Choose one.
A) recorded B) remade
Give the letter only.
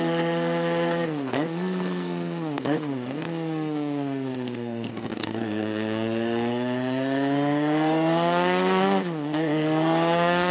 B